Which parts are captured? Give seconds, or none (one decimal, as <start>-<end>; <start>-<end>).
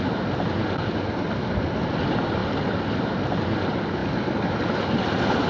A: 0.0-5.5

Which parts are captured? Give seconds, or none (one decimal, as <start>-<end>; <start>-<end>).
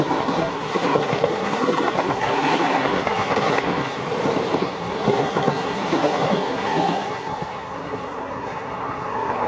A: 4.0-4.6